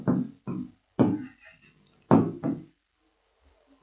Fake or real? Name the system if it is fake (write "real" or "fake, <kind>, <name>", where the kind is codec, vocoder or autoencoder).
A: real